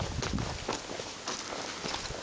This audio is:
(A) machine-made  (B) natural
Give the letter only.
B